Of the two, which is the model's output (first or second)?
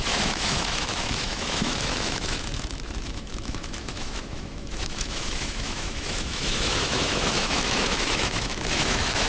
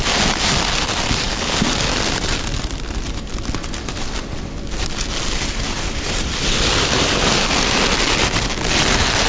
first